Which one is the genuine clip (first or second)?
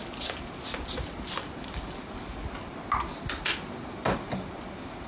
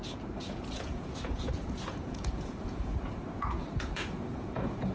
first